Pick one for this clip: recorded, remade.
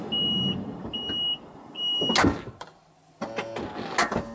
recorded